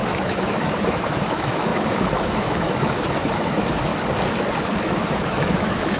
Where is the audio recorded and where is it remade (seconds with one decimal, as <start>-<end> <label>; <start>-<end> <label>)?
0.0-3.9 remade; 3.9-4.8 recorded; 4.8-6.0 remade